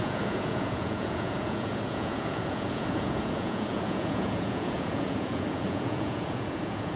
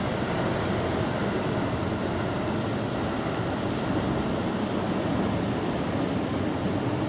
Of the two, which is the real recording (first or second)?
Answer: second